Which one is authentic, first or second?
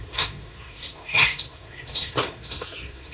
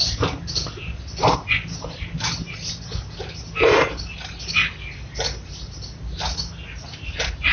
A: second